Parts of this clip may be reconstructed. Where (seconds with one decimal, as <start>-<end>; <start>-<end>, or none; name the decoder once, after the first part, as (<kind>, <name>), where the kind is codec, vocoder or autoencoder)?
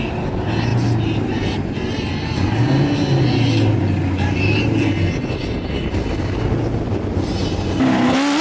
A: none